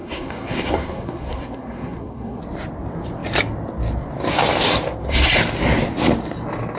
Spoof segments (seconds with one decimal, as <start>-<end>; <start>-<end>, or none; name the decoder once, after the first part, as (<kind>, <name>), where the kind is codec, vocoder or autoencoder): 0.0-2.4 (codec, SNAC)